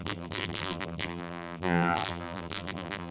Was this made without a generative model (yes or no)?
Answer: no